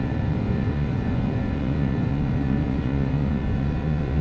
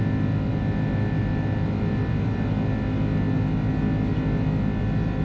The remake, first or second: first